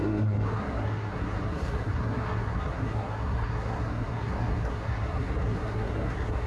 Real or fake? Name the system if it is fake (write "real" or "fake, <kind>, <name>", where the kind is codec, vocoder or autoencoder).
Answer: fake, codec, SNAC